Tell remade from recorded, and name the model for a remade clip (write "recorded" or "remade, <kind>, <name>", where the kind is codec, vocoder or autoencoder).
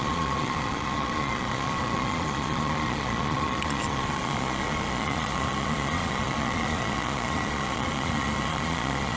remade, vocoder, Vocos